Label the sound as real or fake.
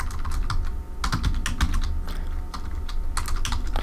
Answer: real